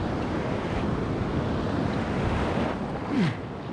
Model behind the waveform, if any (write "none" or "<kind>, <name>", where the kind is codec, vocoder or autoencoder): none